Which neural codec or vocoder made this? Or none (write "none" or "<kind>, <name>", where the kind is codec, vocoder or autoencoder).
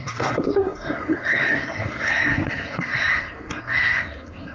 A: codec, SNAC